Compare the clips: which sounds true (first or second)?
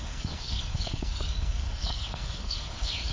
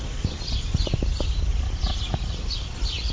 second